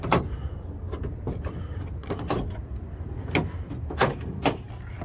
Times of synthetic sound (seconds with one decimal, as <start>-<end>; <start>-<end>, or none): none